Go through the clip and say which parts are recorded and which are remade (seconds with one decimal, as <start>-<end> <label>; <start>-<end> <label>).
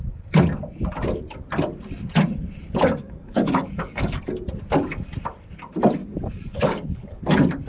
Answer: 0.0-3.0 recorded; 3.0-4.2 remade; 4.2-6.0 recorded; 6.0-7.2 remade; 7.2-7.7 recorded